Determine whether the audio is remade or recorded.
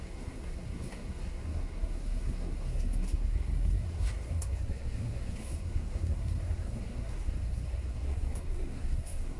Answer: remade